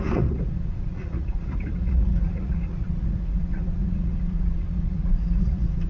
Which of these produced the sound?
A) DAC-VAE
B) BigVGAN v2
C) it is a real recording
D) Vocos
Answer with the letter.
D